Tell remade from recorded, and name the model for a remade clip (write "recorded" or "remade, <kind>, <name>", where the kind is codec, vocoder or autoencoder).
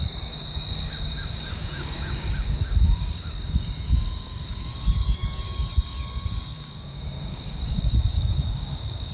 remade, codec, DAC